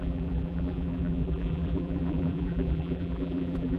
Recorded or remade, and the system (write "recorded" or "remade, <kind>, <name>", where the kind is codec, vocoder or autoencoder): remade, vocoder, BigVGAN v2